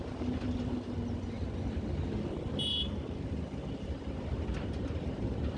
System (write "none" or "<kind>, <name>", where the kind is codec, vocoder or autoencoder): none